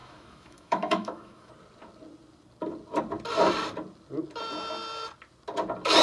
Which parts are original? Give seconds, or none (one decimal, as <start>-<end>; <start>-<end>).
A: 1.5-6.0